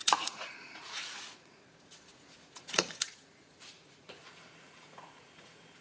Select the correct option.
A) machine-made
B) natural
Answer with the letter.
A